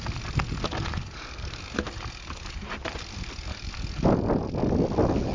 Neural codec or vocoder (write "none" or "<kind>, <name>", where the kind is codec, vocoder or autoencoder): none